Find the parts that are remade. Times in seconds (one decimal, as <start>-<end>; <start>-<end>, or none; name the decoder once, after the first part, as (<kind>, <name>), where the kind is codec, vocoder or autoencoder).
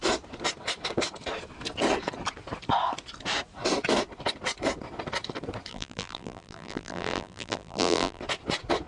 5.7-8.2 (vocoder, BigVGAN v2)